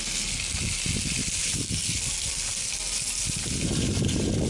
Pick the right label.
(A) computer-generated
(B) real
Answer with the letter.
B